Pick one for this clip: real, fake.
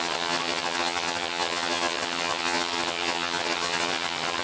fake